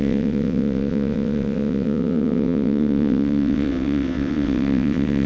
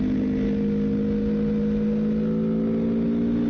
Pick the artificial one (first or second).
first